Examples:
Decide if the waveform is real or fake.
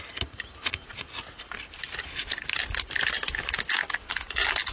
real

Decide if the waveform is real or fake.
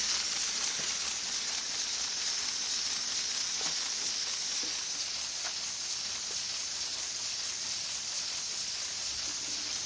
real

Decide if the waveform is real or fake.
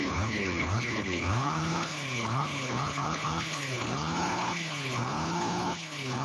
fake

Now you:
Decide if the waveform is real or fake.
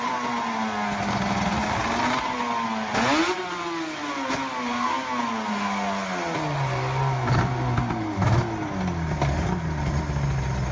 real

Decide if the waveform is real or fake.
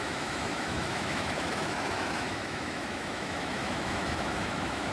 fake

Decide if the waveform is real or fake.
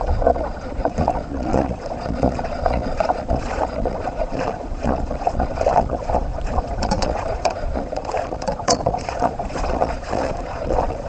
fake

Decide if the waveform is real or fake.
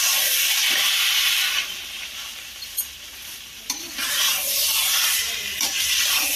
real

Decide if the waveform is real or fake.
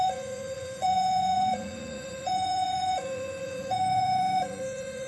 fake